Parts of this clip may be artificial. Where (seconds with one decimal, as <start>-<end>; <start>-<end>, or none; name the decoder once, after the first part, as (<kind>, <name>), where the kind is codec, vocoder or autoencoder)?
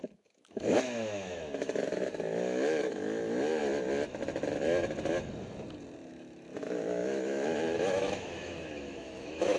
0.0-3.6 (autoencoder, DAC-VAE); 6.1-9.6